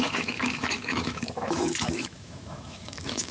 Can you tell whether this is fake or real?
fake